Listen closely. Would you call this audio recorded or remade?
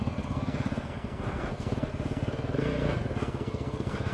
remade